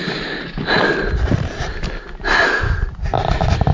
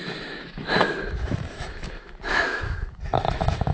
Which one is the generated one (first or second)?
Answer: second